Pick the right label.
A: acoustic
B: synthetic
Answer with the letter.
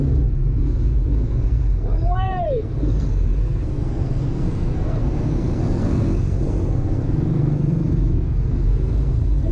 B